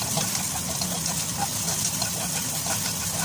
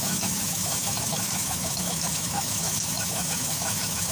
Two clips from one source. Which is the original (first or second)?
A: first